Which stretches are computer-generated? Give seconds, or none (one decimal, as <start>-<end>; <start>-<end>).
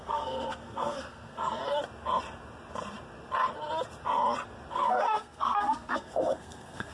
0.0-1.6; 4.7-6.9